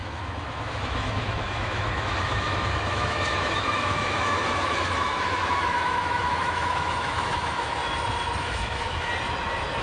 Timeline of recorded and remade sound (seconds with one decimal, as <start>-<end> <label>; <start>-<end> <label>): 0.0-7.8 remade; 7.8-8.4 recorded; 8.4-9.1 remade; 9.1-9.8 recorded